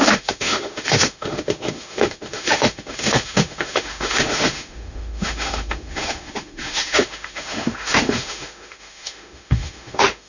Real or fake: fake